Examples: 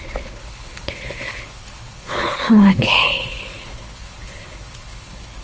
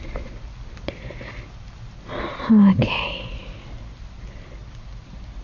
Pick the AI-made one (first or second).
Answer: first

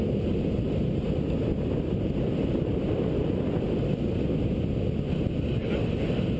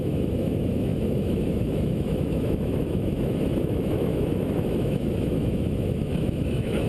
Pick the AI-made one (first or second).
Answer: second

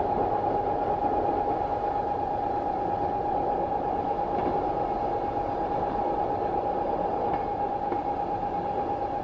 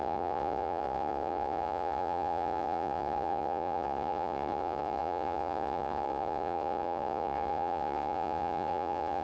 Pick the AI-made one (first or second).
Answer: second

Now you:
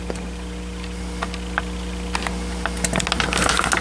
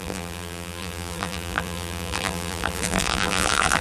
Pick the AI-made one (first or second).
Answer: second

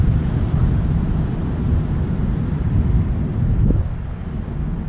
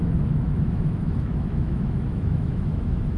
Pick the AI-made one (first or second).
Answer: second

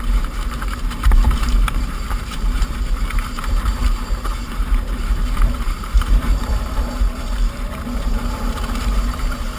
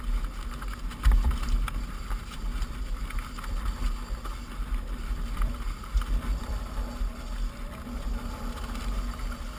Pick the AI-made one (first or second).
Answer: first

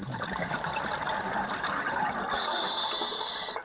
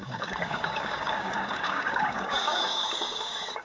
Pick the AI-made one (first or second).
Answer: second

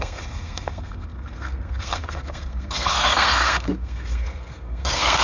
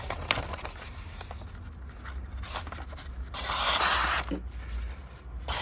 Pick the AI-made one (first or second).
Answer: first